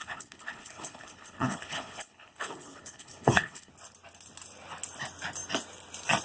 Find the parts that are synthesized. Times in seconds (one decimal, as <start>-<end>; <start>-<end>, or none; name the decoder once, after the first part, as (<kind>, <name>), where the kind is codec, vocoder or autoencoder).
0.0-3.7 (codec, HILCodec)